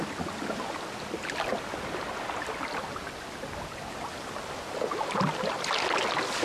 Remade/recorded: recorded